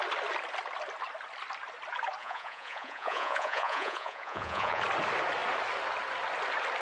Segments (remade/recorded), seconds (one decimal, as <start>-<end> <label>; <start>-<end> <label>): 0.0-2.2 recorded; 2.2-4.8 remade; 4.8-6.8 recorded